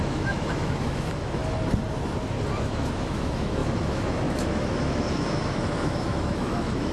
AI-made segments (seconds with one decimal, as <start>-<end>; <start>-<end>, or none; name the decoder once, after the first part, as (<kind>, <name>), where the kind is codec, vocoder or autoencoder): 0.0-1.4 (autoencoder, DAC-VAE); 2.6-6.9